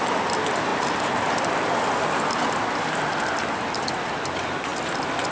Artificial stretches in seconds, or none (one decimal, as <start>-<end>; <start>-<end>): none